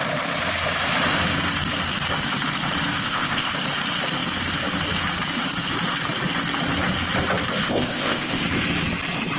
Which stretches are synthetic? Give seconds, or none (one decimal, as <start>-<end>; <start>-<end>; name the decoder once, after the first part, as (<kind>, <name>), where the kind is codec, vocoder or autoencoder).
3.0-3.5 (codec, ZipCodec); 7.5-8.4